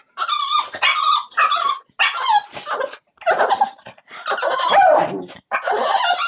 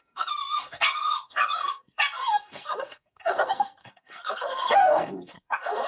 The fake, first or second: second